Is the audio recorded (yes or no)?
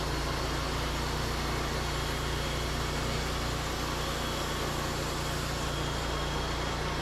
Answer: yes